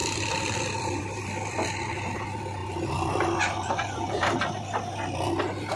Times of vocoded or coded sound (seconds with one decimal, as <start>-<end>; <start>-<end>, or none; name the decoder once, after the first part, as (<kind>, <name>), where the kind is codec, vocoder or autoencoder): 0.0-1.8 (vocoder, BigVGAN v2); 2.6-4.4